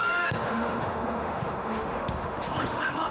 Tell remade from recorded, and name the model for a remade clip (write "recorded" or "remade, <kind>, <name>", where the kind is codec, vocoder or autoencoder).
remade, autoencoder, DAC-VAE